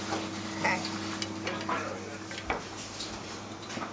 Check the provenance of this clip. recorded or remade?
recorded